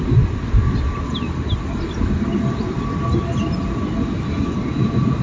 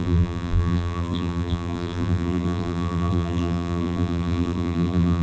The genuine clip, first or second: first